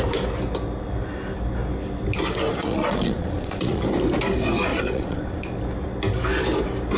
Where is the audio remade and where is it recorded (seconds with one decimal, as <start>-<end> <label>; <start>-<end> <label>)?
0.0-2.5 recorded; 2.5-3.8 remade; 3.8-4.7 recorded; 4.7-5.4 remade; 5.4-7.0 recorded